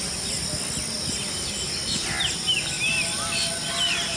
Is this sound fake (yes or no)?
no